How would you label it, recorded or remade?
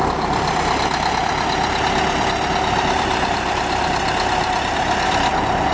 recorded